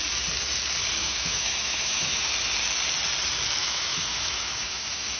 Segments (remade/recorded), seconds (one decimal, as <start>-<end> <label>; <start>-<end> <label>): 0.0-1.0 recorded; 1.0-2.3 remade; 2.3-3.6 recorded; 3.6-5.2 remade